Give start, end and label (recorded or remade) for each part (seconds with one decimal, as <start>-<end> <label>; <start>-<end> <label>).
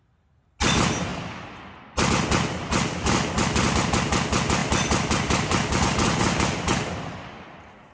0.0-4.6 recorded; 4.6-6.2 remade; 6.2-7.9 recorded